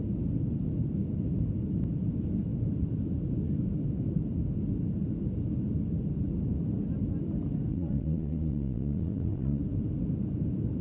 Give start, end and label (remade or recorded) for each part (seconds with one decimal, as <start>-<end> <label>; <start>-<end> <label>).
0.0-7.7 recorded; 7.7-9.6 remade; 9.6-10.8 recorded

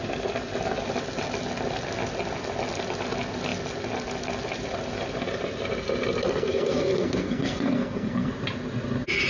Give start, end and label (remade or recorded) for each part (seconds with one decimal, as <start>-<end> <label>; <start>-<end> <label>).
0.0-6.2 recorded; 6.2-8.3 remade; 8.3-9.3 recorded

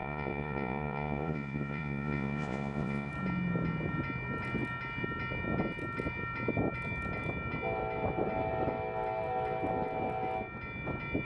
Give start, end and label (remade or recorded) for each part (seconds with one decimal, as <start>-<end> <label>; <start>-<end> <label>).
0.0-3.1 remade; 3.1-11.2 recorded

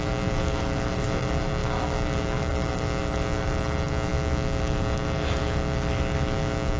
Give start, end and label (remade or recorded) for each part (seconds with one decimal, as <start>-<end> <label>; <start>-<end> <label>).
0.0-6.8 remade

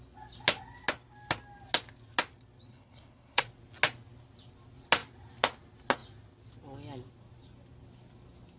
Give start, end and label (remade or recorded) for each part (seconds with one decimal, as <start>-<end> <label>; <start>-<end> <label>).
0.0-2.7 recorded; 2.7-3.4 remade; 3.4-8.6 recorded

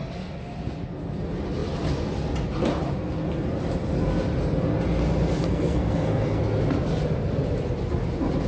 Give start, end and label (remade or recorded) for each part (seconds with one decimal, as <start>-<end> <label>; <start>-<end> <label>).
0.0-5.4 recorded; 5.4-6.4 remade; 6.4-8.5 recorded

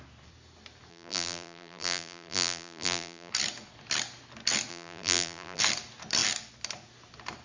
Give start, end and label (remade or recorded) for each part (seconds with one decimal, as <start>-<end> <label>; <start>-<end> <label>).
0.0-0.9 recorded; 0.9-3.3 remade; 3.3-4.7 recorded; 4.7-5.6 remade; 5.6-7.4 recorded

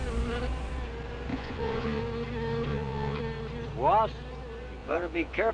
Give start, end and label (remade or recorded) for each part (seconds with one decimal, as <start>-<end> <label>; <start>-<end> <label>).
0.0-1.3 recorded; 1.3-2.0 remade; 2.0-2.7 recorded; 2.7-3.2 remade; 3.2-4.8 recorded; 4.8-5.5 remade